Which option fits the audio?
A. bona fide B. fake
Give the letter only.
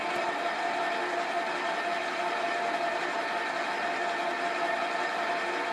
A